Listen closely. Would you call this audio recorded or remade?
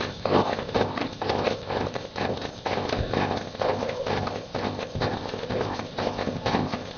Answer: remade